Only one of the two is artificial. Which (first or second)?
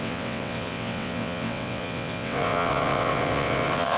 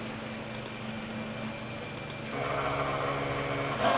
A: first